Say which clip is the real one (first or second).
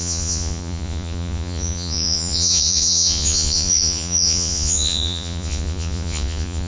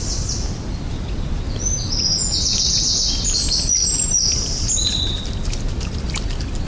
second